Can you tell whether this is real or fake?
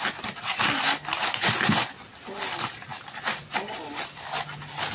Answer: real